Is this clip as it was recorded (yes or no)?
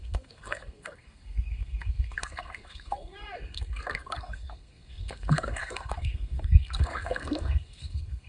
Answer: no